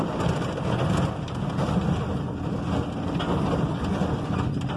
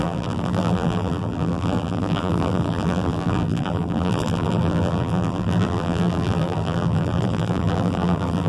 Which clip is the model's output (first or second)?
second